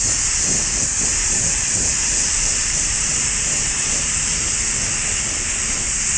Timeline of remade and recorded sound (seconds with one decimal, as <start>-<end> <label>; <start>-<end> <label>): 0.0-1.1 recorded; 1.1-4.8 remade; 4.8-6.2 recorded